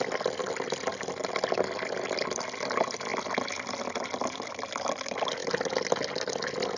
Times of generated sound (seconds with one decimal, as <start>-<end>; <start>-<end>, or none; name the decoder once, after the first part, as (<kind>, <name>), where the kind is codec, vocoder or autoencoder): 0.0-0.9 (vocoder, BigVGAN v2); 2.0-3.1; 3.8-5.4